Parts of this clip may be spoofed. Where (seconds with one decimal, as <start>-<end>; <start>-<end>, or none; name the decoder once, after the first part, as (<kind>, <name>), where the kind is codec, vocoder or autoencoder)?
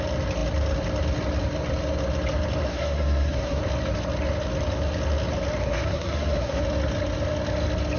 2.7-3.6 (codec, SNAC); 5.6-6.6